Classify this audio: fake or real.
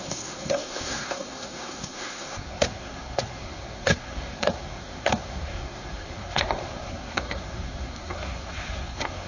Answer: fake